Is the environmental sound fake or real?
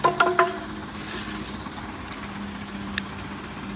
real